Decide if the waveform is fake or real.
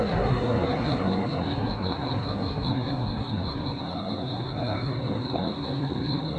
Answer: fake